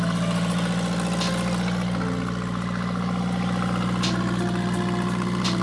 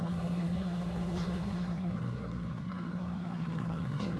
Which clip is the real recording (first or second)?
first